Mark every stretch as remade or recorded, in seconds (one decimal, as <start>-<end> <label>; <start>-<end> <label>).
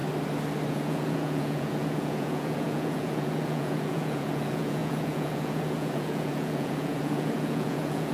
0.0-0.7 recorded; 0.7-8.1 remade